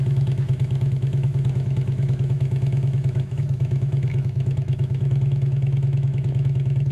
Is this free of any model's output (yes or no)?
no